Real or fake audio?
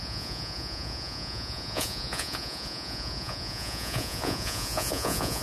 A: fake